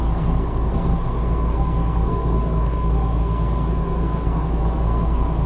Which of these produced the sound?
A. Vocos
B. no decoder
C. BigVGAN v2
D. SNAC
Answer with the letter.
D